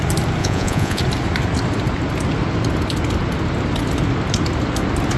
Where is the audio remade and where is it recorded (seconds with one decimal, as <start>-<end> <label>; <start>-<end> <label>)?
0.0-0.4 recorded; 0.4-1.0 remade; 1.0-5.2 recorded